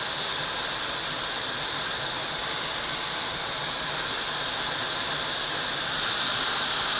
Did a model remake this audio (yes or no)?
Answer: no